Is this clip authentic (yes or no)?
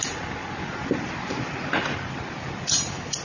yes